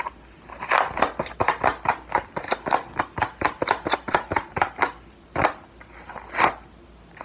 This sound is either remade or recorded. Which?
recorded